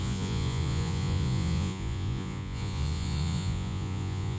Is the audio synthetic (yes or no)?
yes